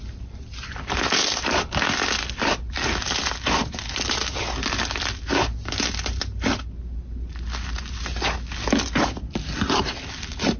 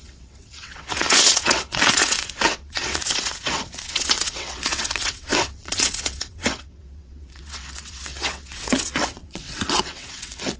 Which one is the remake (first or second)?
second